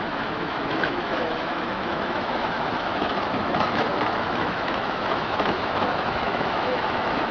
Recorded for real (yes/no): no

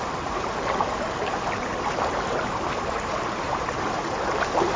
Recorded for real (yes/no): no